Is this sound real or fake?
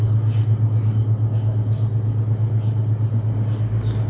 real